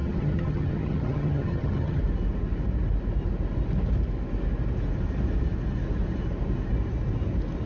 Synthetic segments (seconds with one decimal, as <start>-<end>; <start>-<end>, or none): 0.0-2.0